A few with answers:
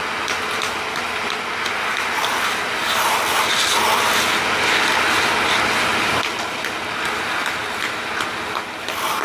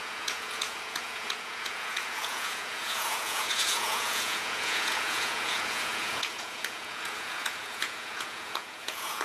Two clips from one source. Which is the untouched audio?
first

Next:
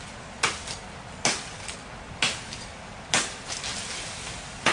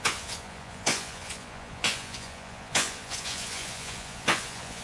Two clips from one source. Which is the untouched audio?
first